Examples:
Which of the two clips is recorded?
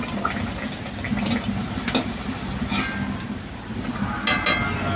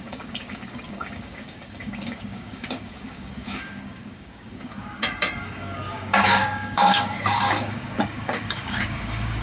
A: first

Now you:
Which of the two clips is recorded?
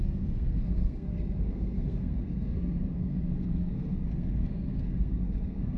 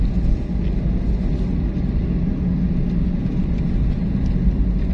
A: second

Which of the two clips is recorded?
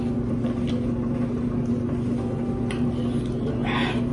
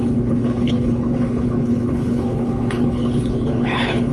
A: first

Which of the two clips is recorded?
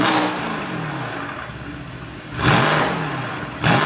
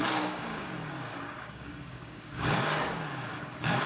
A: first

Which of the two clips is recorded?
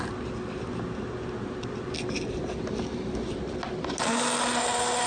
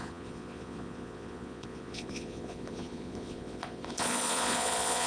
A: first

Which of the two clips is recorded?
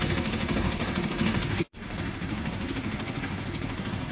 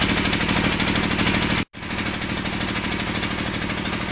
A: second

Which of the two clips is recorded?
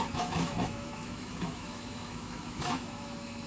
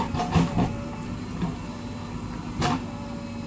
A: second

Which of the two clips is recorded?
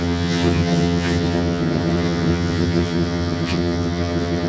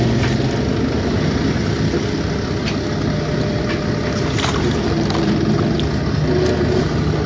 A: second